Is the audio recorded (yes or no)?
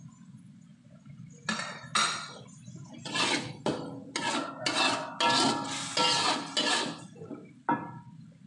yes